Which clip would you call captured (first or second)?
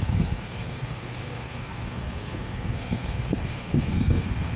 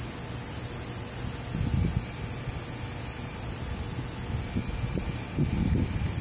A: second